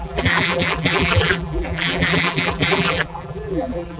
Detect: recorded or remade remade